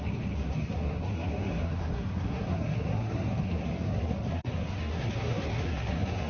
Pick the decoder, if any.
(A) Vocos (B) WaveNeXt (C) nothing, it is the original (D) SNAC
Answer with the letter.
D